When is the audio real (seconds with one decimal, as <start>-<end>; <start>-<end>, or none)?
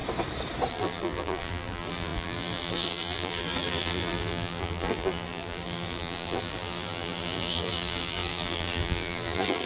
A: 0.0-0.7